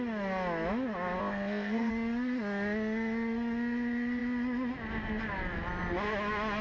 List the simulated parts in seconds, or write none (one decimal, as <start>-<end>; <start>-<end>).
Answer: 1.2-1.9